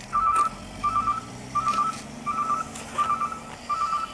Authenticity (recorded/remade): recorded